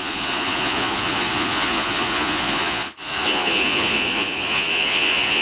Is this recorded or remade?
remade